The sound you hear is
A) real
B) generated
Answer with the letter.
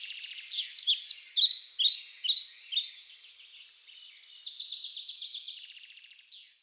A